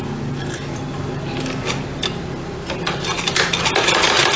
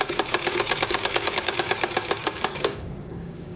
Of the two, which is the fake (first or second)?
second